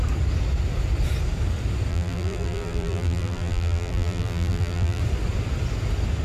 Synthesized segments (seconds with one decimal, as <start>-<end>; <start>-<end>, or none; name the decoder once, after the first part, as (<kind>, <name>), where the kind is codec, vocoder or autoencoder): 1.9-5.0 (vocoder, BigVGAN v2)